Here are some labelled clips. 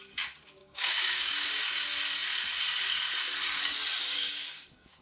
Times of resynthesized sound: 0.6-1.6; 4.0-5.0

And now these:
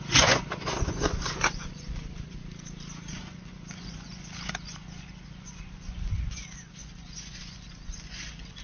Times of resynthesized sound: 0.0-2.4; 3.1-8.6

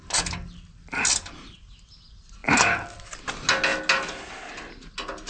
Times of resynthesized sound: none

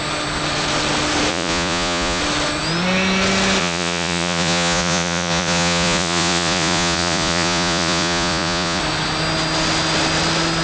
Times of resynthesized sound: 1.3-2.2; 3.6-8.8

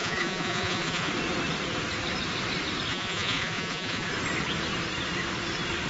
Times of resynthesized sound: 0.0-1.1; 2.9-4.1